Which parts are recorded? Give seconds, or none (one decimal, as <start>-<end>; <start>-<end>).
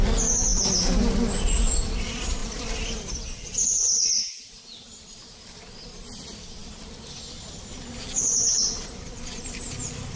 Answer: 0.0-2.4; 4.5-8.6